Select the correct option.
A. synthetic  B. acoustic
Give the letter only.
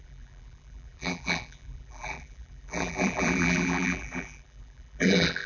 A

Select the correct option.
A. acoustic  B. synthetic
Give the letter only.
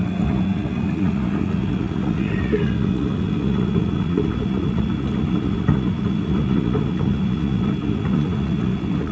B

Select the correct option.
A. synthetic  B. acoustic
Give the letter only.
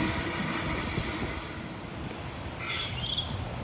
B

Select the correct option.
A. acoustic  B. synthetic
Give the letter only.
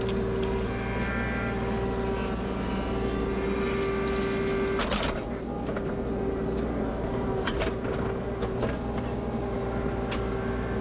A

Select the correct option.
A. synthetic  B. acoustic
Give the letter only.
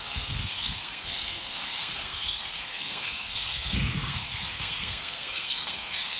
A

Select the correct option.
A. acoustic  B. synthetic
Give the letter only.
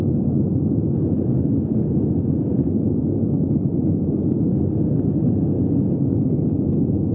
A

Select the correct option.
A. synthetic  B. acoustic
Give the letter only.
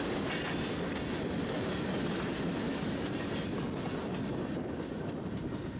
B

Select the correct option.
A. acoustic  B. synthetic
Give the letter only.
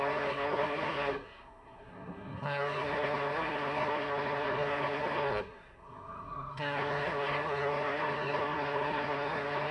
B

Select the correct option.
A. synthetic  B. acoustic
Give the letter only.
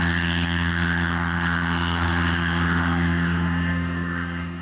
A